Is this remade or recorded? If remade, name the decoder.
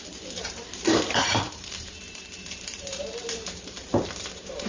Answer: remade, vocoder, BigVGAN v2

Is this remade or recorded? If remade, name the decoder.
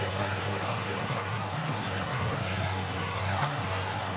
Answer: remade, codec, SNAC